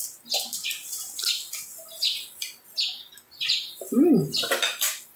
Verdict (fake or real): real